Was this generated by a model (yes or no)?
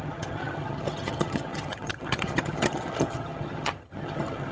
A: yes